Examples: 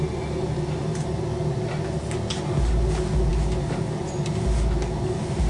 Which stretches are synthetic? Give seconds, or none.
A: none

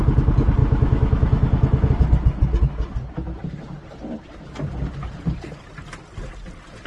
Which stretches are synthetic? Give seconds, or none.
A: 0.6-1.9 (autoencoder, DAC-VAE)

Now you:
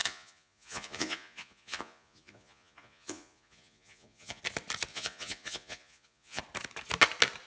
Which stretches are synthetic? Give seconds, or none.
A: 0.0-4.4 (vocoder, Vocos); 4.9-6.4